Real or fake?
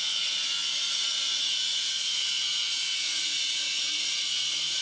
fake